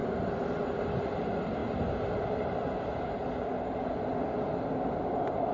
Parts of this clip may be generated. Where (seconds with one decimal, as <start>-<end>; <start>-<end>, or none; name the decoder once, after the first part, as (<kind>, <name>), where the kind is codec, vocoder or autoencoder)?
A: none